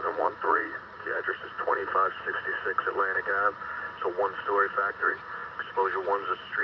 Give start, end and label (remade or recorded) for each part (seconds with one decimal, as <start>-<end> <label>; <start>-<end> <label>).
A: 0.0-1.8 remade; 1.8-4.9 recorded; 4.9-5.4 remade; 5.4-6.6 recorded